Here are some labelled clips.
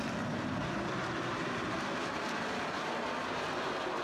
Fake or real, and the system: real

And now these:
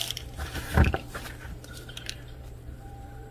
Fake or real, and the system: fake, vocoder, BigVGAN v2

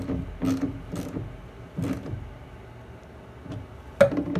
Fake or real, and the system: real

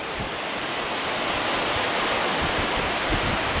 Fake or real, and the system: real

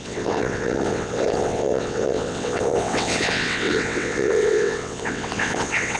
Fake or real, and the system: fake, vocoder, WaveNeXt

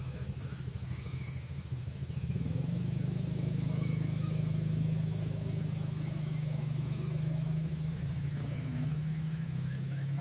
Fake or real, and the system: fake, autoencoder, DAC-VAE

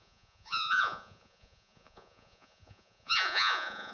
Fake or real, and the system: fake, vocoder, Vocos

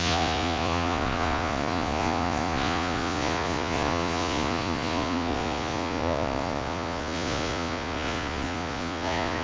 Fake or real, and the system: fake, vocoder, Vocos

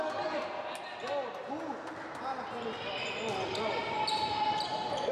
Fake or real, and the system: real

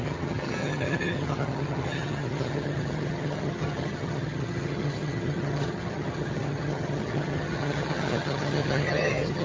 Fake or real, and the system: fake, vocoder, HiFi-GAN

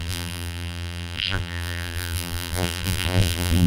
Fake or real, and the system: fake, vocoder, BigVGAN v2